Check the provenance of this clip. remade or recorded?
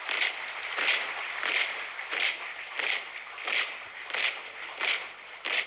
recorded